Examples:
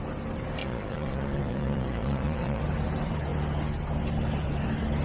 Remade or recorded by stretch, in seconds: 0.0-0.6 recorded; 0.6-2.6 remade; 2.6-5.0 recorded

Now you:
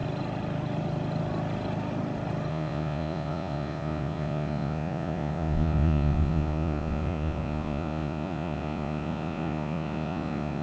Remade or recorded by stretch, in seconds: 0.0-2.5 recorded; 2.5-10.6 remade

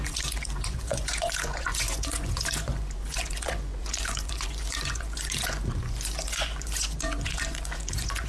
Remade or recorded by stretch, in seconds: 0.0-8.3 remade

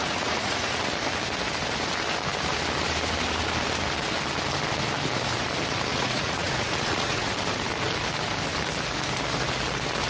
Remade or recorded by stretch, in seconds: 0.0-0.8 remade; 0.8-5.9 recorded; 5.9-7.3 remade; 7.3-10.1 recorded

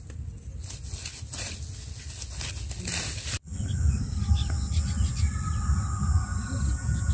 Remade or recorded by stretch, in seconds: 0.0-6.3 recorded; 6.3-7.1 remade

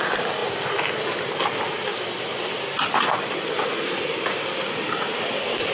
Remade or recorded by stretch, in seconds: 0.0-5.7 recorded

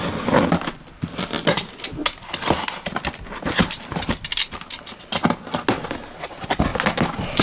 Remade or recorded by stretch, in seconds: 0.0-7.4 recorded